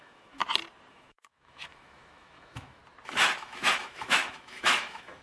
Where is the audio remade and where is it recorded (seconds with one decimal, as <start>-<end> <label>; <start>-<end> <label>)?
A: 0.0-0.4 remade; 0.4-0.9 recorded; 0.9-2.8 remade; 2.8-3.4 recorded; 3.4-5.2 remade